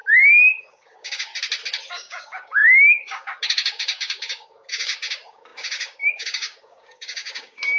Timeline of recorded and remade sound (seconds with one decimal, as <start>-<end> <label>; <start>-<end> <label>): 0.0-0.6 recorded; 0.6-1.3 remade; 1.3-1.9 recorded; 1.9-7.8 remade